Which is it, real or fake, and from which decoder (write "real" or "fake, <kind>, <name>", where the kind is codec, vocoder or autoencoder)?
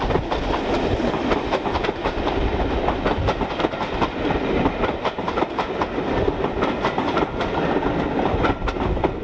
real